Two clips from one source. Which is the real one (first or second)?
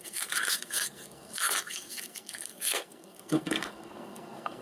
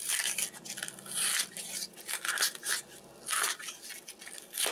second